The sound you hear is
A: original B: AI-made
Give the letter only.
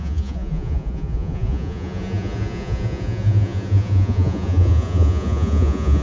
B